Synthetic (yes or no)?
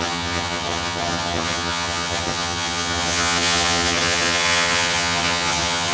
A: yes